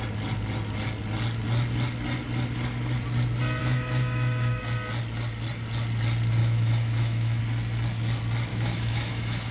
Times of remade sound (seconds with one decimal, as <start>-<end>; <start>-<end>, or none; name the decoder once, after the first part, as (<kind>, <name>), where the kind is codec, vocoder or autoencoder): 3.6-4.6 (autoencoder, DAC-VAE); 6.4-7.4; 8.5-9.5